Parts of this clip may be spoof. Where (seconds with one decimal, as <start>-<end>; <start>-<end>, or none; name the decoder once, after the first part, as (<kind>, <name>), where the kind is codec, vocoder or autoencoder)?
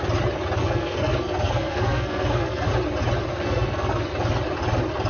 0.6-2.7 (codec, SNAC); 3.3-4.1